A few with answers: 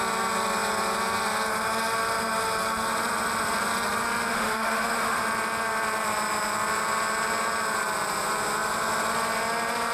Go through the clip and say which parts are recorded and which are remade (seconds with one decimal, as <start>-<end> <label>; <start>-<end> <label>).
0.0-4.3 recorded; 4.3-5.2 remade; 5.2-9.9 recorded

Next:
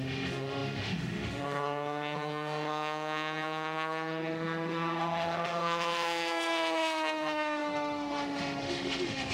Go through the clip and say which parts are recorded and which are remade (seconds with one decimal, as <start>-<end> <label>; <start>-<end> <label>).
0.0-9.3 remade

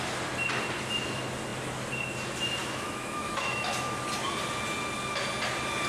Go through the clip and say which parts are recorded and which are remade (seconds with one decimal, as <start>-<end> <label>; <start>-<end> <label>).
0.0-2.6 recorded; 2.6-3.7 remade; 3.7-5.9 recorded

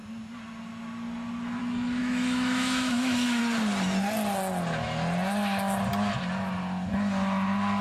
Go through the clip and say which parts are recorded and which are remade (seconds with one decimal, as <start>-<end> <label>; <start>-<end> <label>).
0.0-2.0 recorded; 2.0-3.4 remade; 3.4-7.8 recorded

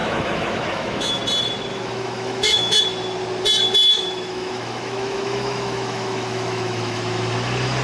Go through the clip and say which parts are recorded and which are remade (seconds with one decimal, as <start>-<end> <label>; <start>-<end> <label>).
0.0-1.2 remade; 1.2-1.7 recorded; 1.7-2.8 remade; 2.8-3.9 recorded; 3.9-7.0 remade; 7.0-7.8 recorded

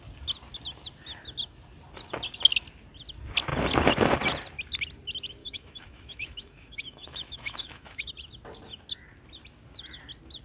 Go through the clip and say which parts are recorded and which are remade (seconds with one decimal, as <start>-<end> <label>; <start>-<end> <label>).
0.0-5.4 recorded; 5.4-8.1 remade; 8.1-10.4 recorded

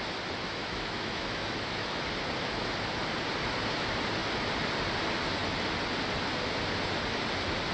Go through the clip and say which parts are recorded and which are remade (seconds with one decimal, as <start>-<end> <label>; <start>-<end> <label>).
0.0-0.4 recorded; 0.4-2.0 remade; 2.0-7.7 recorded

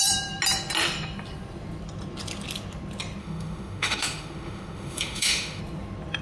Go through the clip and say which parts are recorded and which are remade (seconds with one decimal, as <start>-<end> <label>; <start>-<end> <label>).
0.0-3.2 recorded; 3.2-5.6 remade; 5.6-6.2 recorded